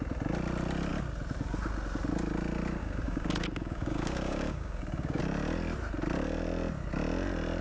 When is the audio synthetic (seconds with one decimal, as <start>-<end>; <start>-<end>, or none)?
2.8-5.2

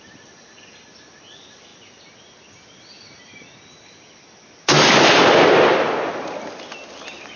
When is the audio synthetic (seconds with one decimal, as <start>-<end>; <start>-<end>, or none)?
none

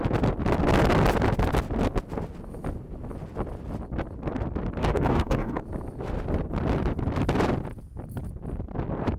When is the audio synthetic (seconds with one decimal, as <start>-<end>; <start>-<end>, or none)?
4.8-5.6

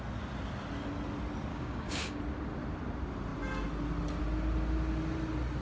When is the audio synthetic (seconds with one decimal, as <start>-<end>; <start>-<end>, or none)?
1.5-2.2